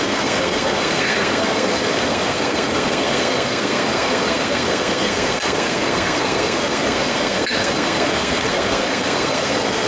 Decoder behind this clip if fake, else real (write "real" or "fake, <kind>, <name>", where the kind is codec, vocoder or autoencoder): fake, codec, SNAC